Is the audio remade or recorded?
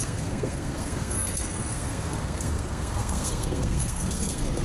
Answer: remade